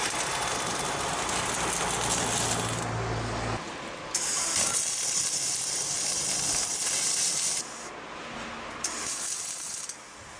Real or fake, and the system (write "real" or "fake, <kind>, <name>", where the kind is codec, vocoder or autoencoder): real